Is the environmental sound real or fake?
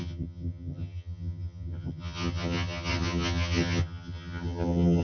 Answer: fake